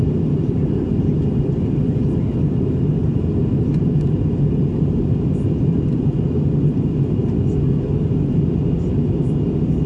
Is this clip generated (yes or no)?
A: no